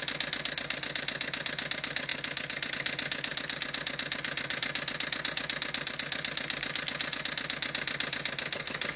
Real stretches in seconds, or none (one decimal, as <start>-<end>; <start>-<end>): 0.0-9.0